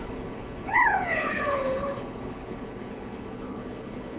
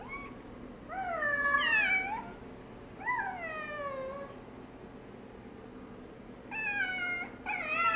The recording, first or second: second